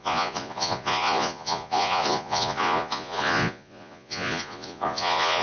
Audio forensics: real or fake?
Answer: fake